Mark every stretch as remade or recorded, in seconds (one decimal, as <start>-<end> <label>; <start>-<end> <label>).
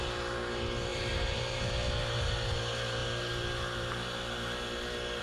0.0-0.9 recorded; 0.9-1.6 remade; 1.6-5.2 recorded